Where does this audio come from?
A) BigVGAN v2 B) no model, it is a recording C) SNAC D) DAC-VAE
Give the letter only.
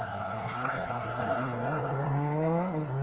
C